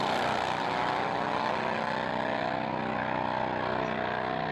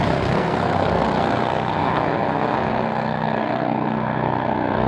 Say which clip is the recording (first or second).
first